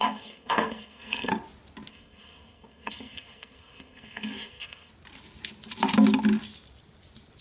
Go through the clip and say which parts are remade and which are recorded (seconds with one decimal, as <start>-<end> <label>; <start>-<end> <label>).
0.0-1.3 remade; 1.3-1.9 recorded; 1.9-4.9 remade; 4.9-7.4 recorded